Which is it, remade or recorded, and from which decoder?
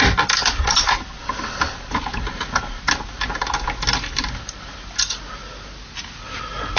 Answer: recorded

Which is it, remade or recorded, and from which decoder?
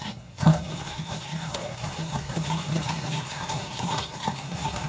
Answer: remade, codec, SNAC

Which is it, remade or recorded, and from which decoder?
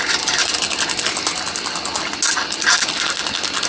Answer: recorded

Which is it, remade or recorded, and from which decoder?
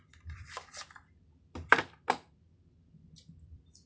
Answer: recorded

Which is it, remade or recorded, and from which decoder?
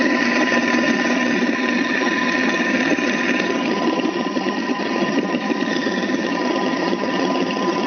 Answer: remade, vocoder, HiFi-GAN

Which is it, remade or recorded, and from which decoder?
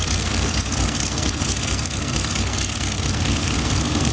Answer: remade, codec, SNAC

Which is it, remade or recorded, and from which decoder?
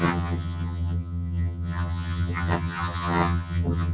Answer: remade, vocoder, HiFi-GAN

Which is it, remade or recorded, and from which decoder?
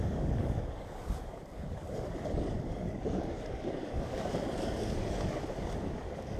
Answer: remade, codec, DAC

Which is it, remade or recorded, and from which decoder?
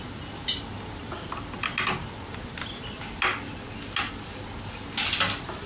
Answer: recorded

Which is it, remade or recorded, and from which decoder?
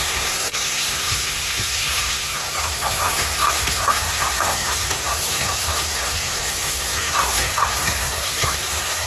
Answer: remade, codec, SNAC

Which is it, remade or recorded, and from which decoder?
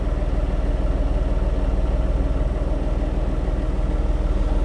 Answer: recorded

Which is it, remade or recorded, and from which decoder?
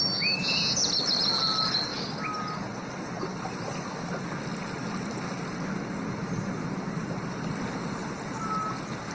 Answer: recorded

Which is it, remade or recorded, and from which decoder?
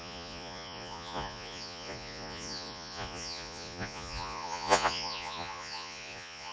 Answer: remade, vocoder, Vocos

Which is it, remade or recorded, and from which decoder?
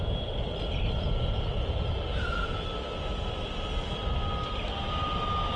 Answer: recorded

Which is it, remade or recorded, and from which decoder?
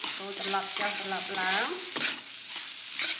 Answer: recorded